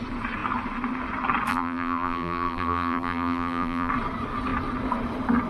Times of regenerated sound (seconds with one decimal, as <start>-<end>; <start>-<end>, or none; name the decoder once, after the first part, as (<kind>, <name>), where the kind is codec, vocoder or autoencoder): 1.5-3.9 (vocoder, BigVGAN v2)

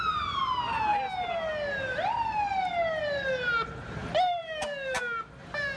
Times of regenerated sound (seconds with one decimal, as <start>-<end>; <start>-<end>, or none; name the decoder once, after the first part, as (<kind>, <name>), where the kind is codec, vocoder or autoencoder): 4.0-5.0 (vocoder, BigVGAN v2)

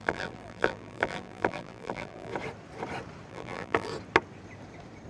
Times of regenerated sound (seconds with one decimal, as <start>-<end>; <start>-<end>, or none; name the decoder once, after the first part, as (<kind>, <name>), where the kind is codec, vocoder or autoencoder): 0.0-2.3 (vocoder, BigVGAN v2); 3.3-3.9

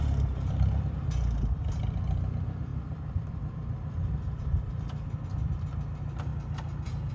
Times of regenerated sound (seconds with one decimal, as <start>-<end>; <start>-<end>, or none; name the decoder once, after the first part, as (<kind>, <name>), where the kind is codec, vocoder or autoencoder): 2.7-4.7 (vocoder, BigVGAN v2)

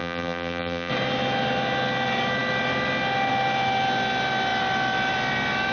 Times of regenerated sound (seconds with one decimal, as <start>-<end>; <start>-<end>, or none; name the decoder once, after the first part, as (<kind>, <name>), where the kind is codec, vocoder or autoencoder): 0.0-0.9 (vocoder, BigVGAN v2)

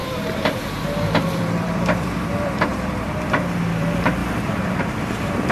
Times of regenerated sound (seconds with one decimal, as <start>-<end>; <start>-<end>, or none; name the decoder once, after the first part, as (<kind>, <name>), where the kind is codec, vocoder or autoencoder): 0.0-4.2 (vocoder, BigVGAN v2); 4.8-5.5

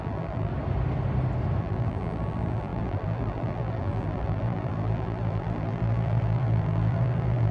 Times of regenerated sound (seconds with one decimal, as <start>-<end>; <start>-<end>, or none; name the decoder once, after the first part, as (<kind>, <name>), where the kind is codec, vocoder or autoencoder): 0.0-0.5 (vocoder, BigVGAN v2); 1.6-7.5